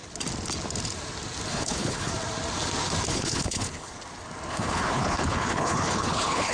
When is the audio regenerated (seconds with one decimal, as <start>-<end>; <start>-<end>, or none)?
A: 1.5-2.1; 3.1-3.9; 4.5-6.5